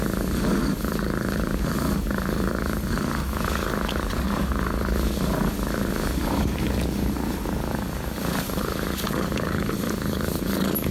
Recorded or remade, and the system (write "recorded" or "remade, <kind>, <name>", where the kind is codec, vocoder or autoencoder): remade, codec, DAC